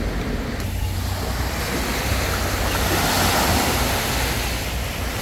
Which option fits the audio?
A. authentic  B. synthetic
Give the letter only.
A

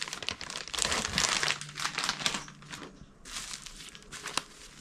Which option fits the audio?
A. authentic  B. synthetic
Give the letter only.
A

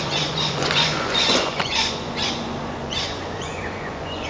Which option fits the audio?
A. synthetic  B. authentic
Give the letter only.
A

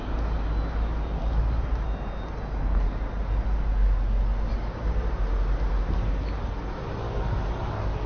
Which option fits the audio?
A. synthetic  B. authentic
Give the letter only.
B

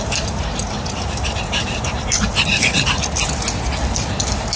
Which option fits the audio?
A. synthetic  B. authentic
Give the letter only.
B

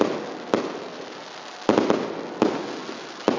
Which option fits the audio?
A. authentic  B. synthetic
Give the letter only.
A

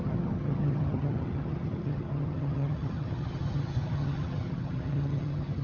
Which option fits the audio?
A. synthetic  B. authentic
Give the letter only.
A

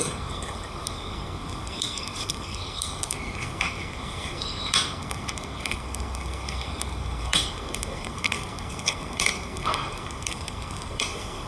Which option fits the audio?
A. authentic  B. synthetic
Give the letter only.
B